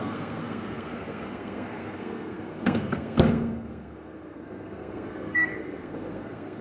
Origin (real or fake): fake